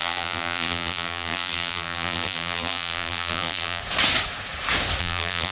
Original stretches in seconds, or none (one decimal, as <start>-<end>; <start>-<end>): 3.8-5.0